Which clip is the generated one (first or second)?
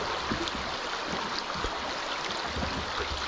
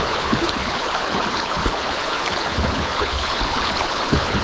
second